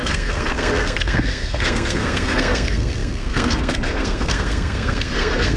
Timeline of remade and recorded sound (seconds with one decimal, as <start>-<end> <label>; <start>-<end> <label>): 0.0-5.6 remade